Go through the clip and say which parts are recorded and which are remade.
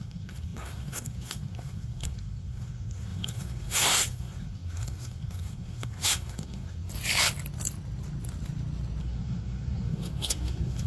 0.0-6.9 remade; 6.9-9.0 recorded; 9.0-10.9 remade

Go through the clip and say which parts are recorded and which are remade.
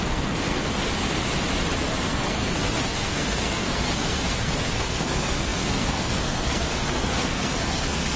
0.0-0.7 remade; 0.7-2.0 recorded; 2.0-8.2 remade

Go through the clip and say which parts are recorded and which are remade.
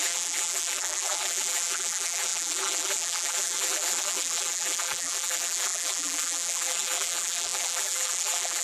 0.0-8.6 remade